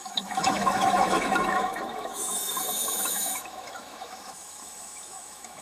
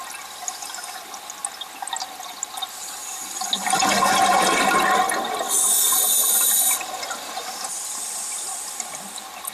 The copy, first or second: first